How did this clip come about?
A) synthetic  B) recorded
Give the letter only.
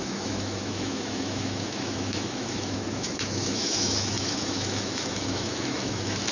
A